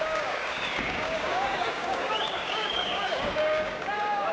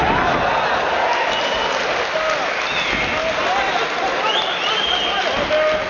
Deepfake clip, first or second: first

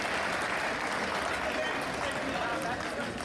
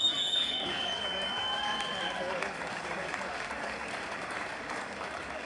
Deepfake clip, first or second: second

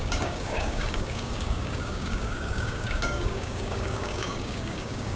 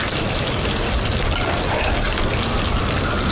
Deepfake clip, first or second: first